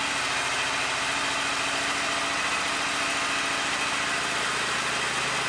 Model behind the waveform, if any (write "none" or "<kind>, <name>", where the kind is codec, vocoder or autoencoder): none